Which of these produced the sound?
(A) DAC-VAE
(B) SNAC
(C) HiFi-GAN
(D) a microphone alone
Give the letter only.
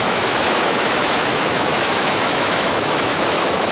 A